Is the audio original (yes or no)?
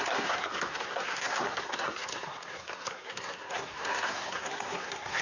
no